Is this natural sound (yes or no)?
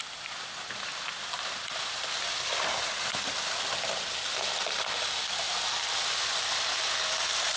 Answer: yes